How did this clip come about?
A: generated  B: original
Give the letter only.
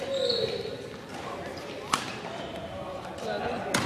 B